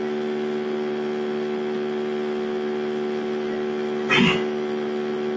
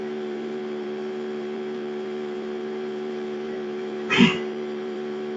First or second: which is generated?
second